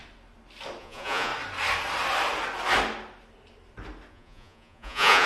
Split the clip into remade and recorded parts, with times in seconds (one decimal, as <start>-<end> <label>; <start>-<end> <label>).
0.0-0.8 recorded; 0.8-1.3 remade; 1.3-4.1 recorded; 4.1-5.3 remade